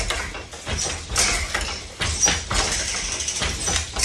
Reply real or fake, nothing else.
real